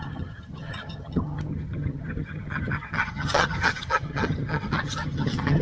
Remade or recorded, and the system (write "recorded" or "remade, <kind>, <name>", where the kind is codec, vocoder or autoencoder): remade, vocoder, HiFi-GAN